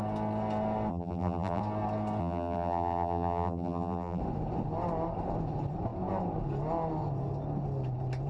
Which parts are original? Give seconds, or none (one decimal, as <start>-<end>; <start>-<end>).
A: 0.0-0.9; 1.6-2.2; 4.2-8.3

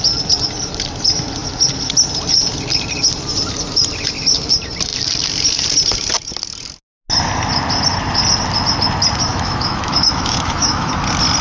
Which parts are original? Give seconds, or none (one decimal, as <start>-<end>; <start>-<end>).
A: 0.0-9.3; 10.9-11.4

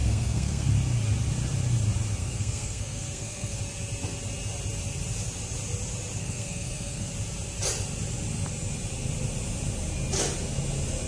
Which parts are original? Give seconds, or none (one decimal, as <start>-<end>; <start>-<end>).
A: 0.7-2.2; 3.6-6.2; 7.1-11.1

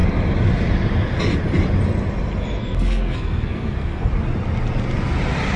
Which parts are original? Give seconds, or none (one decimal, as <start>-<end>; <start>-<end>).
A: 0.0-2.6; 4.1-5.6